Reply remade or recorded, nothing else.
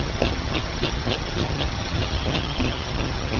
remade